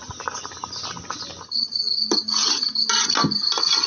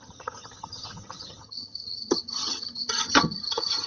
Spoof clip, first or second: second